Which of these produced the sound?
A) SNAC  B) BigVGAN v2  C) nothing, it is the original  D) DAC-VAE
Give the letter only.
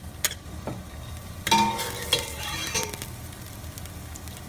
C